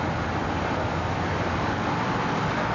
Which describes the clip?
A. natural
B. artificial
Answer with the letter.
B